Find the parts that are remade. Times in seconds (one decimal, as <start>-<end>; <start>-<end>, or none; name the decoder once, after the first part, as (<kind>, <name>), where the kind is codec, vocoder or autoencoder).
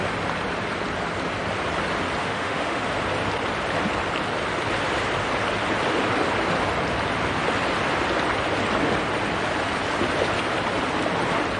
2.2-2.8 (autoencoder, DAC-VAE)